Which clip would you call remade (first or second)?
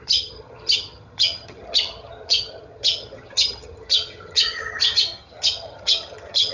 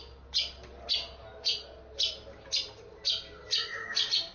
first